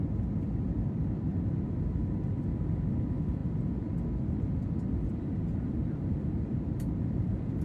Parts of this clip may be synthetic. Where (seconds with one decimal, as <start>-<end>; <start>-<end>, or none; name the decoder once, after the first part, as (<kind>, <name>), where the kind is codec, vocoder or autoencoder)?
0.0-1.3 (vocoder, BigVGAN v2); 2.0-3.4; 5.1-7.6